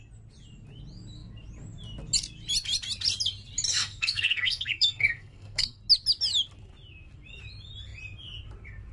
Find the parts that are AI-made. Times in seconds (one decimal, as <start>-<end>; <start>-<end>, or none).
3.7-5.8